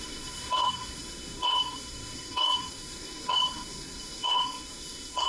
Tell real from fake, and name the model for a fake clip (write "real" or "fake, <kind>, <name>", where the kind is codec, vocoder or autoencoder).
fake, codec, SNAC